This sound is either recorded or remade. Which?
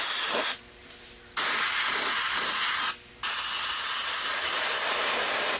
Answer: recorded